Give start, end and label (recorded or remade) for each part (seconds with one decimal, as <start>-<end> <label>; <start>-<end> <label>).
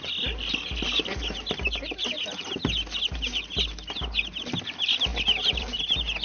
0.0-3.1 recorded; 3.1-3.9 remade; 3.9-5.1 recorded; 5.1-5.8 remade; 5.8-6.2 recorded